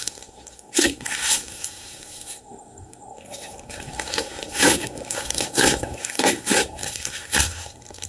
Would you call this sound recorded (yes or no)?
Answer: no